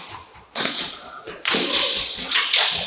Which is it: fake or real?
fake